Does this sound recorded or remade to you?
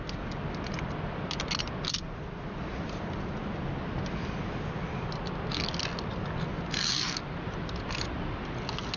recorded